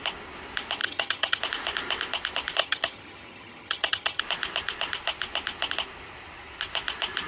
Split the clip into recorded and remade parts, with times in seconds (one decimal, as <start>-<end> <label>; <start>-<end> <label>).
0.0-0.8 recorded; 0.8-1.4 remade; 1.4-2.6 recorded; 2.6-4.2 remade; 4.2-7.3 recorded